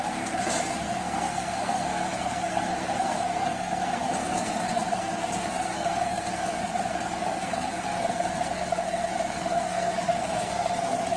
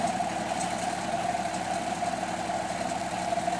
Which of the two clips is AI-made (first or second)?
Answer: first